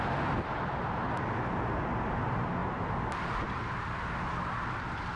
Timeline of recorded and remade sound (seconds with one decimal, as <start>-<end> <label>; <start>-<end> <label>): 0.0-5.2 recorded